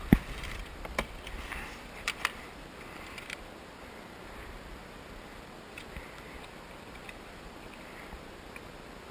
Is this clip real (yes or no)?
no